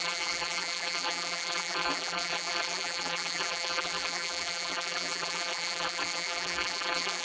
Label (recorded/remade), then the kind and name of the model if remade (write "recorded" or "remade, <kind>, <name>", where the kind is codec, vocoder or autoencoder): remade, vocoder, BigVGAN v2